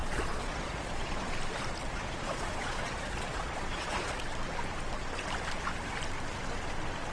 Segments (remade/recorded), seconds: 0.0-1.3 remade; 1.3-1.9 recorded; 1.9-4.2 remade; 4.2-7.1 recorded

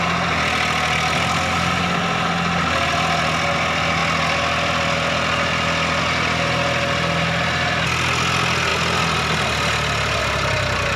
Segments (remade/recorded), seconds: 0.0-11.0 recorded